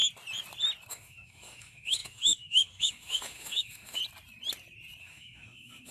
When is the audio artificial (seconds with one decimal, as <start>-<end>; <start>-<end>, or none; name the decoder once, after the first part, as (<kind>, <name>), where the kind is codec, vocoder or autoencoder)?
0.9-4.0 (autoencoder, DAC-VAE); 5.0-5.9